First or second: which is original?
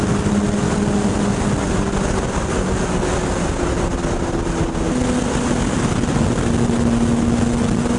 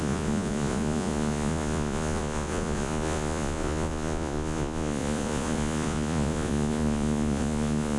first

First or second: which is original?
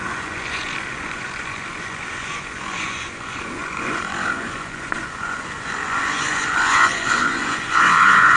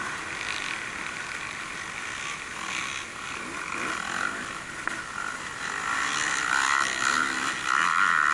second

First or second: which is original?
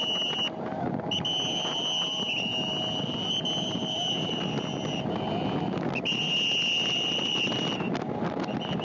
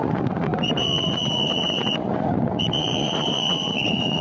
first